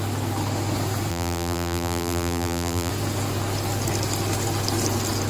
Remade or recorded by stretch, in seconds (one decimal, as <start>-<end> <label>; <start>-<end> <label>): 0.0-1.1 recorded; 1.1-2.9 remade; 2.9-5.3 recorded